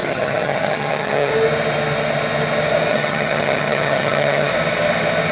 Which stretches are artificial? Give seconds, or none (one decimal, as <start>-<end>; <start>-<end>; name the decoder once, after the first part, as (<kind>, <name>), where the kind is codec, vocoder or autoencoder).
0.0-1.3 (vocoder, HiFi-GAN); 2.9-4.5